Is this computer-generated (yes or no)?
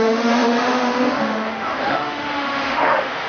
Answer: yes